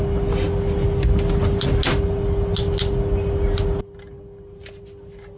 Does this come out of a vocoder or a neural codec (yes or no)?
no